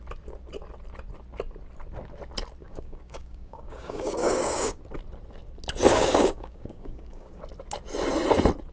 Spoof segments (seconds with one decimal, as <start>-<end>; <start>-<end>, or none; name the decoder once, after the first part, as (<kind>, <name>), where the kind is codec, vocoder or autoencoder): 2.6-4.8 (codec, DAC); 5.9-7.4